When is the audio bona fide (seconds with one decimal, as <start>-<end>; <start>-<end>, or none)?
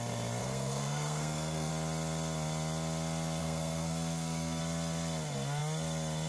0.0-0.4; 1.7-3.4; 4.6-6.3